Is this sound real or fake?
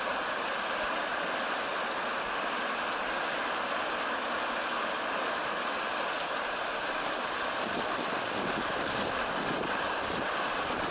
real